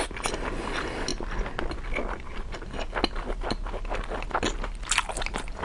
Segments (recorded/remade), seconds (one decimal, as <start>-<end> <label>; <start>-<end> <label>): 0.0-5.6 recorded